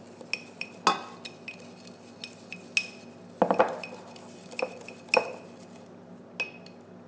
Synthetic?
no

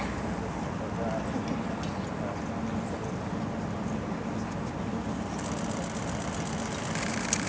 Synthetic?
no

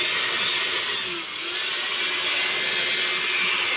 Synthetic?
no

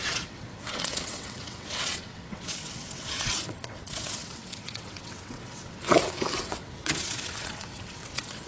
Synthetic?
yes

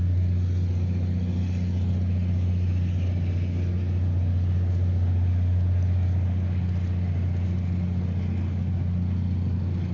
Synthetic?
no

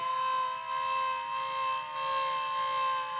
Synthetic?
no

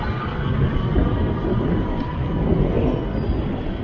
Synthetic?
no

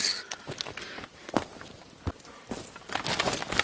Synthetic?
no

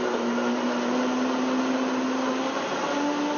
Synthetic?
no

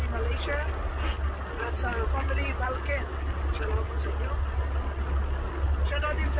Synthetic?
no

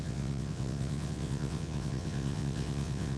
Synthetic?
yes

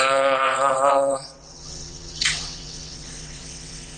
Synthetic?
yes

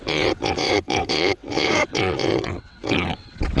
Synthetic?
yes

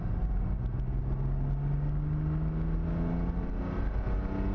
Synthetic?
no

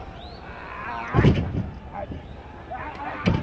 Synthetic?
no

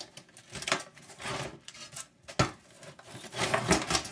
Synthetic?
no